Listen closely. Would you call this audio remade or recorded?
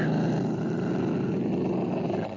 recorded